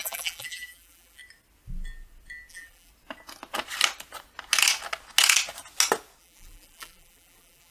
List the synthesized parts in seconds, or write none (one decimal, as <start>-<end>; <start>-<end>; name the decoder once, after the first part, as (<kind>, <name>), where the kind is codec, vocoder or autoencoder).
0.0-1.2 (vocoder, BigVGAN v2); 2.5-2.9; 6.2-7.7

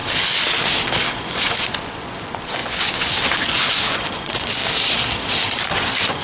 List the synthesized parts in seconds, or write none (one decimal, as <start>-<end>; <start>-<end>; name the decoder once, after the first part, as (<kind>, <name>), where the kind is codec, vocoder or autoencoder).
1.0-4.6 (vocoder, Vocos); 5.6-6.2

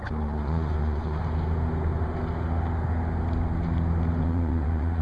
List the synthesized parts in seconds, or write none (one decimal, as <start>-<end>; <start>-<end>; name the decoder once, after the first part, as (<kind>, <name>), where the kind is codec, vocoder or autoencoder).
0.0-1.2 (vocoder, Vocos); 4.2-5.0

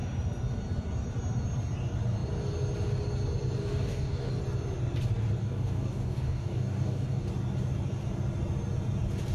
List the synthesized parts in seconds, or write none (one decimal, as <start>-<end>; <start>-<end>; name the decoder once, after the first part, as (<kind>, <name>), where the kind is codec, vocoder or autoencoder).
3.6-4.3 (codec, DAC); 5.4-7.3

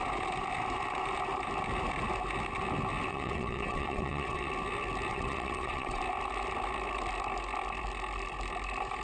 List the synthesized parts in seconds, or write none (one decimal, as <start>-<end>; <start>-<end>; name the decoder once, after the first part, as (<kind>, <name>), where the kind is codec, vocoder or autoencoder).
3.1-4.5 (vocoder, WaveNeXt); 5.1-6.0

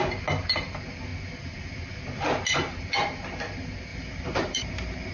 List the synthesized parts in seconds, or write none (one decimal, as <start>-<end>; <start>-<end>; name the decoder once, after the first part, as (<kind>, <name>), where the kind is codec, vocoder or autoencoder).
3.9-5.1 (vocoder, BigVGAN v2)